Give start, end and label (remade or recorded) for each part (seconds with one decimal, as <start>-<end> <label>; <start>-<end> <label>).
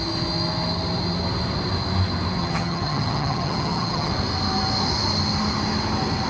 0.0-2.4 recorded; 2.4-4.1 remade; 4.1-6.3 recorded